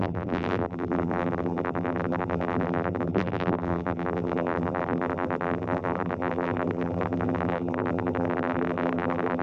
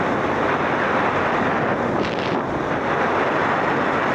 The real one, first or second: second